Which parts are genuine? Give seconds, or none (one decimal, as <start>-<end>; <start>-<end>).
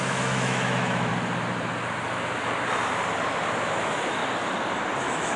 1.1-3.8; 4.2-5.0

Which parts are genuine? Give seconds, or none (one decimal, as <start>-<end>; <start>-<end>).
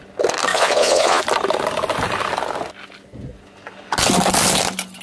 0.0-0.5; 1.2-5.0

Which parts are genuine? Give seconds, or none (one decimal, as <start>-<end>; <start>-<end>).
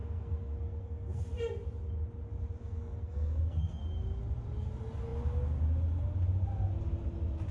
1.3-2.6; 3.8-7.5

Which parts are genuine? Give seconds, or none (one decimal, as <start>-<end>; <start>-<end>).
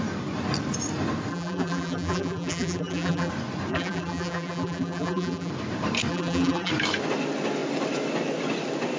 0.0-1.3; 3.3-3.7; 5.5-6.1; 6.7-9.0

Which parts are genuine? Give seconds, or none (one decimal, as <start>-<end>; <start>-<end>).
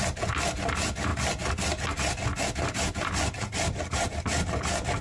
0.0-5.0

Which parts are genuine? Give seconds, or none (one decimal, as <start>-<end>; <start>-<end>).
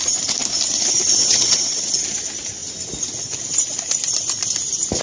0.0-1.2; 1.9-5.0